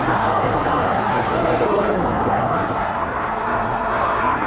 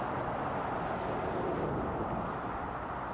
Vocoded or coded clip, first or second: first